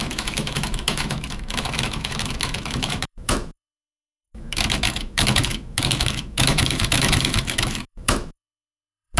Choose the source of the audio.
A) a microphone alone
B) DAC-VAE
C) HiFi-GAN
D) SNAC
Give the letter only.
B